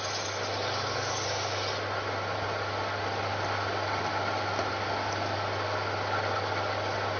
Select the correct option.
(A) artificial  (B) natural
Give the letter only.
B